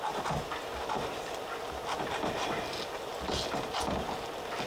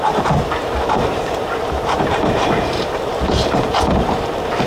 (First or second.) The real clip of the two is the first